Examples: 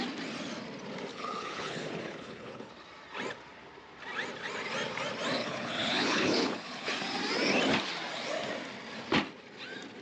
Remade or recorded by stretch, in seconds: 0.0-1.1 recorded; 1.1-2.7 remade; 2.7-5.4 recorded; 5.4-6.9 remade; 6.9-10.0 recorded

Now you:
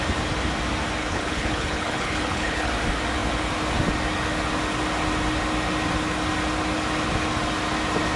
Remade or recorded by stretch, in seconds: 0.0-1.0 recorded; 1.0-2.7 remade; 2.7-8.2 recorded

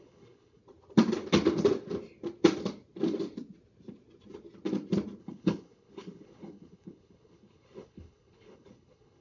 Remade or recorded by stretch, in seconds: 0.0-0.6 remade; 0.6-5.2 recorded; 5.2-9.2 remade